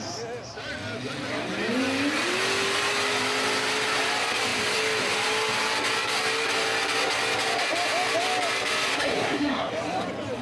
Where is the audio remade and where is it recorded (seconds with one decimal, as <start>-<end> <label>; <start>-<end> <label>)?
0.0-8.9 recorded; 8.9-9.7 remade; 9.7-10.4 recorded